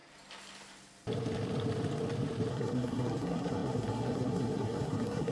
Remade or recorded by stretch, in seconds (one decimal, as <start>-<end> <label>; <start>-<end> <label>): 0.0-2.5 recorded; 2.5-5.3 remade